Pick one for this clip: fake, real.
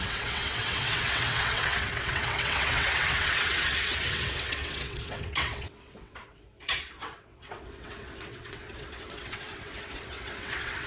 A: fake